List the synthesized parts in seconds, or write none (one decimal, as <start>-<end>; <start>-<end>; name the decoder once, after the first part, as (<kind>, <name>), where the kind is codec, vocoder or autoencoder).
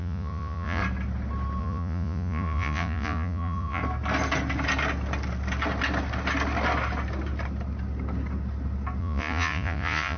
0.0-0.8 (vocoder, Vocos); 1.6-3.8; 9.0-10.2